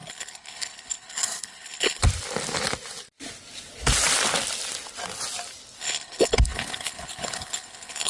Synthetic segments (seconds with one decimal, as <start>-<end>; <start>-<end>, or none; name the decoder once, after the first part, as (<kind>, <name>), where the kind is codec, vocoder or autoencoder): 0.0-2.0 (codec, HILCodec); 5.8-8.1